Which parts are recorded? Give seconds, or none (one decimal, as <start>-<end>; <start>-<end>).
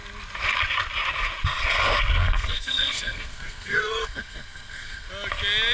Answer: 0.0-2.2; 5.1-5.7